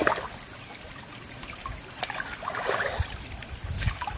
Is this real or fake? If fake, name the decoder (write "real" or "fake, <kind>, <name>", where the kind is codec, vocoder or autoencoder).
real